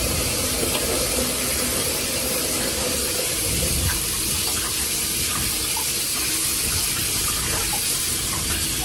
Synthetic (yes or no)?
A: no